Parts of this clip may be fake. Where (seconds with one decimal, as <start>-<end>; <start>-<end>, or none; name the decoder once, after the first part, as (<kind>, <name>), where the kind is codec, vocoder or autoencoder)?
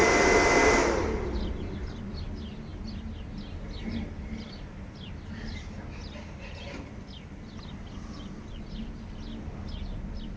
none